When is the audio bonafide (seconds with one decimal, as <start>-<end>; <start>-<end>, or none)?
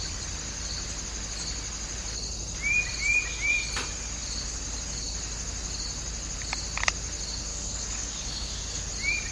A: 0.0-7.5; 8.8-9.3